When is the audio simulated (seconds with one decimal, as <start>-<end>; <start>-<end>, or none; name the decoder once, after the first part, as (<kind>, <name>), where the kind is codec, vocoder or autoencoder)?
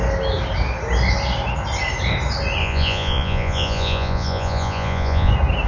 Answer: 2.6-5.3 (vocoder, Vocos)